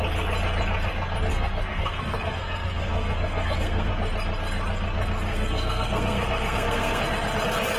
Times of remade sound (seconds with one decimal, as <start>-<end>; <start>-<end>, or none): 1.3-3.9; 5.3-7.0